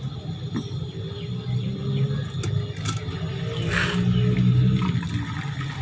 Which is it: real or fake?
real